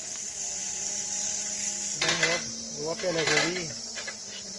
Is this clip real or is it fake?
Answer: real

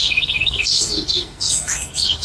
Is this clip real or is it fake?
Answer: fake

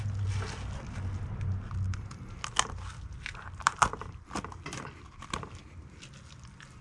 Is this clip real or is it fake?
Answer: real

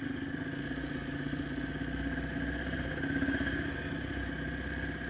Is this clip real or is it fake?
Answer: real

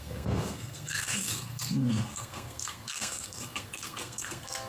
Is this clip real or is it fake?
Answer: fake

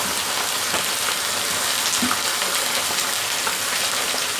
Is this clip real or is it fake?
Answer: real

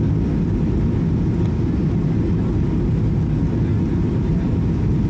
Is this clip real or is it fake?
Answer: real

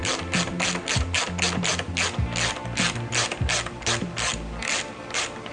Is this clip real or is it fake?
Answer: fake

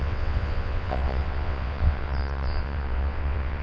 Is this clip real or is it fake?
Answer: fake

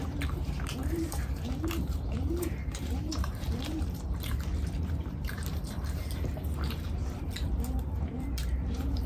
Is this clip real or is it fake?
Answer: fake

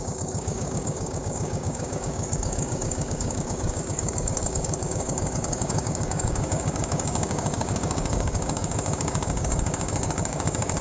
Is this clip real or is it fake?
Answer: fake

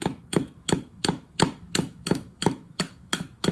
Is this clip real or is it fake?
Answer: fake